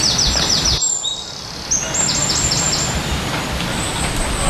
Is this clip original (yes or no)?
yes